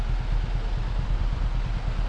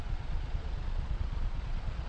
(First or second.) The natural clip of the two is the first